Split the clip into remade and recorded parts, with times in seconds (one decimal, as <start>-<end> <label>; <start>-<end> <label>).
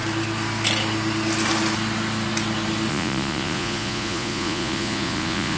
0.0-2.9 recorded; 2.9-5.6 remade